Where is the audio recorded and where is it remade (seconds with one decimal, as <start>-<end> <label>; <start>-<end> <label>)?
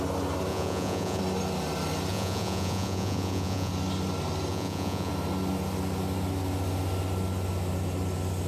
0.0-0.5 recorded; 0.5-1.2 remade; 1.2-2.1 recorded; 2.1-3.7 remade; 3.7-4.5 recorded; 4.5-5.1 remade; 5.1-8.5 recorded